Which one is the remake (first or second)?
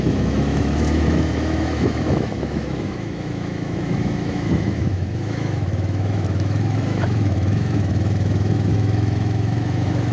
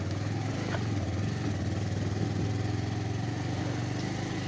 first